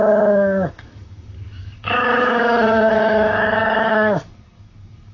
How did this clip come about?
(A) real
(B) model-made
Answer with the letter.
B